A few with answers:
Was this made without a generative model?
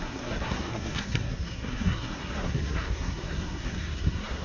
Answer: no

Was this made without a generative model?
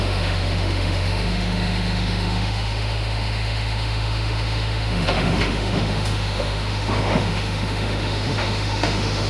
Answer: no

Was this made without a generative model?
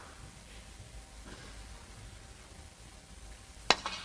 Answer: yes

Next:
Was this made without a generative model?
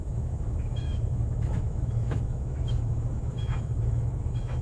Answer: no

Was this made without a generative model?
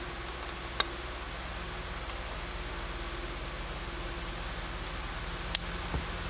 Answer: yes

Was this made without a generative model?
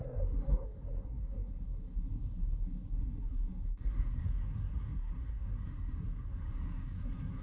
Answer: no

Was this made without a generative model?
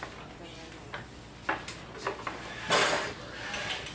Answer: yes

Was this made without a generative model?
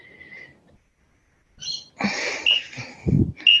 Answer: yes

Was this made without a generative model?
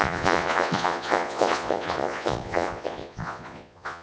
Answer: no